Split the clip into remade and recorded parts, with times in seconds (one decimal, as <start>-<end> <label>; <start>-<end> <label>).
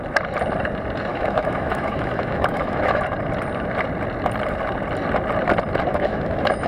0.0-1.1 recorded; 1.1-3.0 remade; 3.0-5.9 recorded; 5.9-6.7 remade